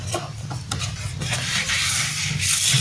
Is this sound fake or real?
real